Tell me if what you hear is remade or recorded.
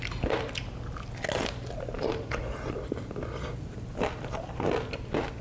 recorded